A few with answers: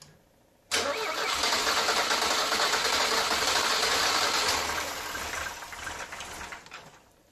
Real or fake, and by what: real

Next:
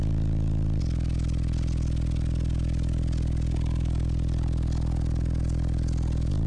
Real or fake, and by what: real